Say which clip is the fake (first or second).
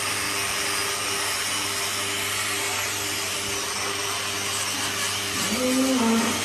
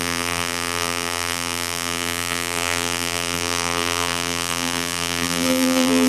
second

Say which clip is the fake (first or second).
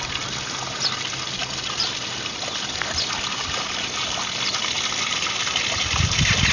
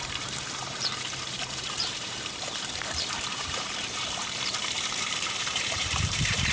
second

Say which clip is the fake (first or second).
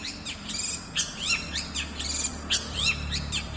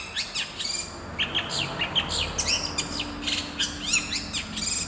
first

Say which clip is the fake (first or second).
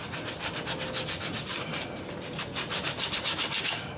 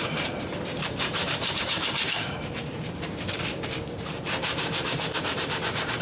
second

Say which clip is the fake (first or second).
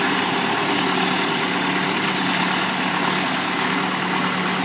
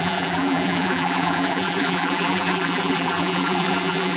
second